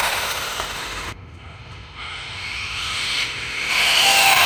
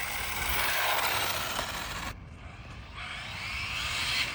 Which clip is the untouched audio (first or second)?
second